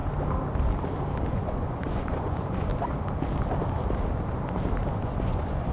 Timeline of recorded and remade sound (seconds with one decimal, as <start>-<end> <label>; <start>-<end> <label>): 0.0-1.3 recorded; 1.3-2.7 remade; 2.7-4.9 recorded; 4.9-5.7 remade